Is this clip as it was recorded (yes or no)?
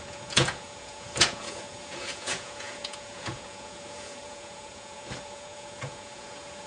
no